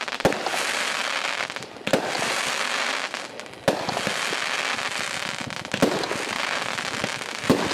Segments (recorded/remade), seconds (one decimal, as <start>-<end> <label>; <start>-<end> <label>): 0.0-7.7 recorded